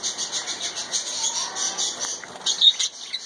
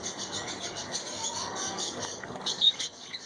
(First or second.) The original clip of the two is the first